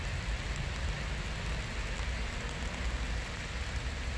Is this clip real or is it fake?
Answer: real